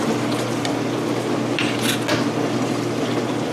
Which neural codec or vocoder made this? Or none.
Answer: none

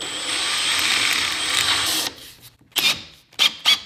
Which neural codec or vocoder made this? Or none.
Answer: none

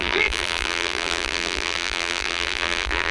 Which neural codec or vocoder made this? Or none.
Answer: vocoder, BigVGAN v2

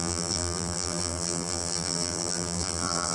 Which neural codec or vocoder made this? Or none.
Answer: vocoder, BigVGAN v2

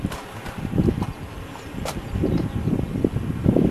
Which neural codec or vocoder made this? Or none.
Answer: vocoder, BigVGAN v2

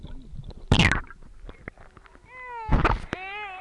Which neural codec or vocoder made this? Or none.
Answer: none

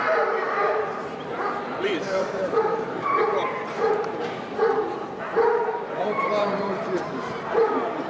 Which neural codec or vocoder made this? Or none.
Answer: vocoder, BigVGAN v2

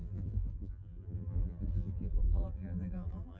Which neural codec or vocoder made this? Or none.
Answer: vocoder, BigVGAN v2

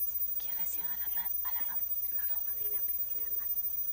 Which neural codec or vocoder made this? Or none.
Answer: vocoder, BigVGAN v2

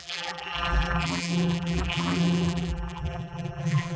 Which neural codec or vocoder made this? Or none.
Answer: vocoder, BigVGAN v2